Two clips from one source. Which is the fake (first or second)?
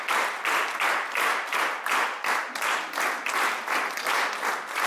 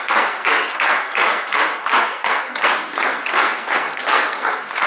second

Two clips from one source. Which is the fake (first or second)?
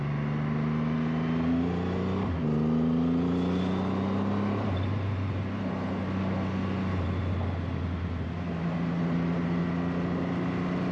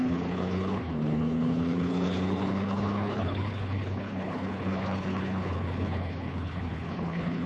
second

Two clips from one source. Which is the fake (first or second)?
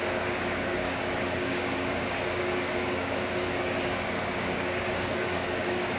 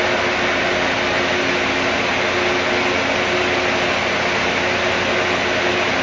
first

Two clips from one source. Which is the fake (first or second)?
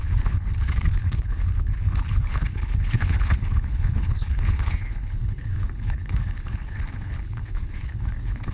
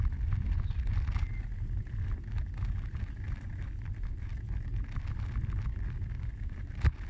first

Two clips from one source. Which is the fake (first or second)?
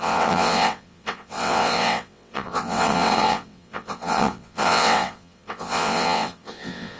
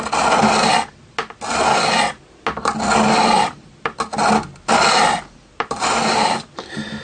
first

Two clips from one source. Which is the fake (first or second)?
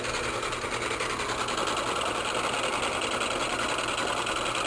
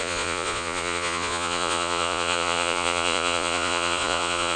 second